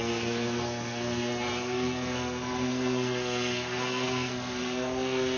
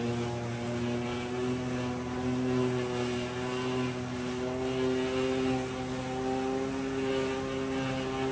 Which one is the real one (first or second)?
second